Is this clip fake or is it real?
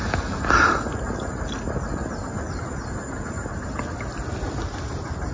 real